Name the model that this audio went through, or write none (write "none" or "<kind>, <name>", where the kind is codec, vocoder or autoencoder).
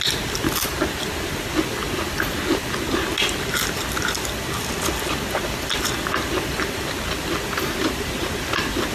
none